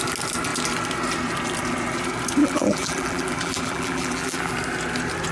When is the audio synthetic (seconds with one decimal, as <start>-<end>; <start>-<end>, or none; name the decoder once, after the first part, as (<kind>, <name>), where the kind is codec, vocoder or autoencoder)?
2.4-4.5 (vocoder, BigVGAN v2)